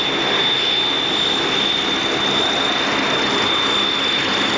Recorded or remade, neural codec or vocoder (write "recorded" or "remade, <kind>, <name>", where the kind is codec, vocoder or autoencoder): recorded